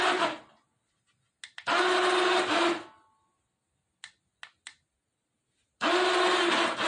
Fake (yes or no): no